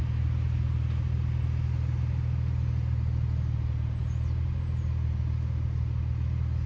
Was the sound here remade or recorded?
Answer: recorded